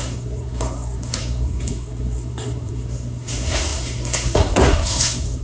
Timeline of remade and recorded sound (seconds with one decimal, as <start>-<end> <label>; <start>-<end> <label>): 0.0-5.4 remade